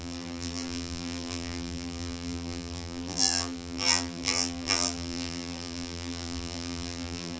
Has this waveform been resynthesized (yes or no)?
yes